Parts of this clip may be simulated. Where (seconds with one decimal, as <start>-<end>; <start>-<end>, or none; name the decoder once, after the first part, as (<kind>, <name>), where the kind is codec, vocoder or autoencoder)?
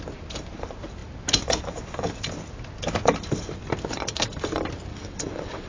4.9-5.7 (vocoder, WaveNeXt)